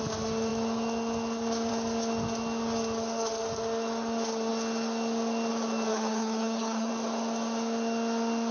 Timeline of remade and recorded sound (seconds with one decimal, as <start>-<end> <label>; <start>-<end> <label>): 0.0-5.9 recorded; 5.9-6.9 remade; 6.9-8.5 recorded